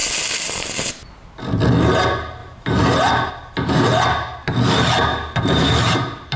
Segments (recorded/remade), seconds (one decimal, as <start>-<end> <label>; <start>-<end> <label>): 0.0-0.9 remade; 0.9-2.4 recorded; 2.4-3.3 remade; 3.3-5.1 recorded; 5.1-6.4 remade